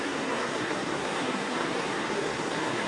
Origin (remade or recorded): remade